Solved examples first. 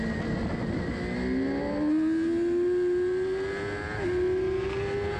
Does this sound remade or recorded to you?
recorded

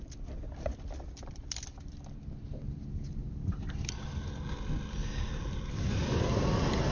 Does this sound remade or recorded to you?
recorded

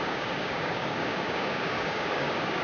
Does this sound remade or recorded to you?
remade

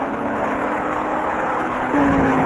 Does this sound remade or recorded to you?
remade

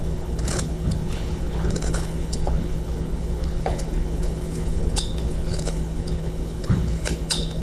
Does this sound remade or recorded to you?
remade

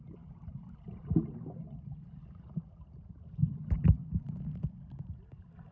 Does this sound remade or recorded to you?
recorded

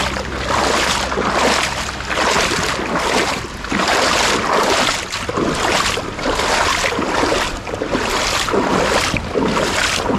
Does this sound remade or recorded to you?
recorded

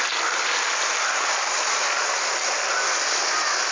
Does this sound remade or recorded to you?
recorded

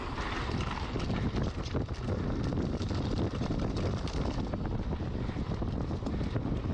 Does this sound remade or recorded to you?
recorded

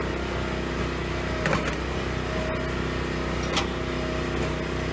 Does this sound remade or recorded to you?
recorded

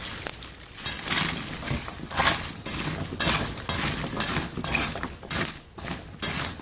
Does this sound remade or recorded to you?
recorded